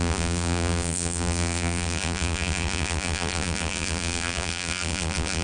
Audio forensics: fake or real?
fake